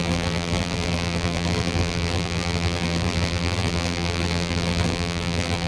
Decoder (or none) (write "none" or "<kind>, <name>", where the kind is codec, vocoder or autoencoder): vocoder, BigVGAN v2